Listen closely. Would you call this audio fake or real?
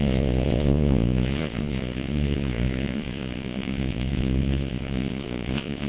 fake